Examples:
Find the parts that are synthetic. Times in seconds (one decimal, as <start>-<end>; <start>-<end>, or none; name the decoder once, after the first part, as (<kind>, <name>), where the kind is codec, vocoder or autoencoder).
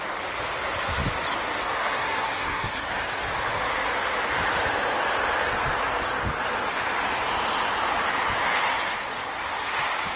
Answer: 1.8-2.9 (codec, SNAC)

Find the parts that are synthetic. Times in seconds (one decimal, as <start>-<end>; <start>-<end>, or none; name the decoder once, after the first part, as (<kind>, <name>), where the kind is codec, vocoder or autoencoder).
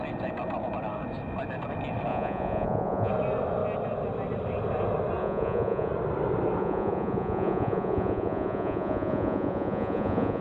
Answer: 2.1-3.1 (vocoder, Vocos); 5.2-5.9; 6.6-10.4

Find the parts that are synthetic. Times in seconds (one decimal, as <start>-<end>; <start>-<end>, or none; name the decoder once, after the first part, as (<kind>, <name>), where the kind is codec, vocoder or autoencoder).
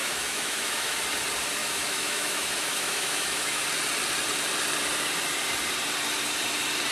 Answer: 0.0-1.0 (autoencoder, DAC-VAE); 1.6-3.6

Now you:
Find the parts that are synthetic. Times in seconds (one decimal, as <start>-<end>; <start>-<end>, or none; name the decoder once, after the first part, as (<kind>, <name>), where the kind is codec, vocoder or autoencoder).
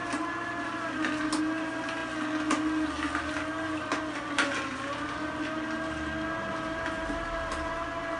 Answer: none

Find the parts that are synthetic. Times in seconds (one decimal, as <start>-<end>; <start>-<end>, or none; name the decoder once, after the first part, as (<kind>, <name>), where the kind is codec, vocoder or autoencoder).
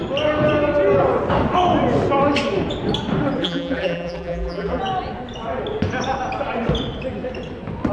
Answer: 3.4-4.8 (vocoder, BigVGAN v2)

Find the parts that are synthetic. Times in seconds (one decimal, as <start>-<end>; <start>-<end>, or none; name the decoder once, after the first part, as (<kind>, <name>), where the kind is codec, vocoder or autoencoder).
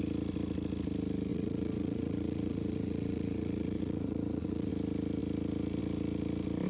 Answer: 1.3-4.7 (vocoder, Vocos)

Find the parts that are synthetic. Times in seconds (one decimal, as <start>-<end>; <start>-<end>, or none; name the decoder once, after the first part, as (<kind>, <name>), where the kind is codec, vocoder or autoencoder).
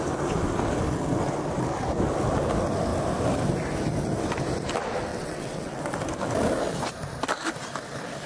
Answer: 5.1-5.8 (vocoder, WaveNeXt)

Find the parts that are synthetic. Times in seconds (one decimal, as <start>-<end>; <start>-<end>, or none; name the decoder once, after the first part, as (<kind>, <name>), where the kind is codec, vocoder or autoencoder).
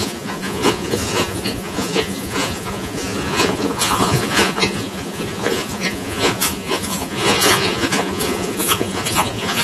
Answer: 0.0-9.6 (vocoder, Vocos)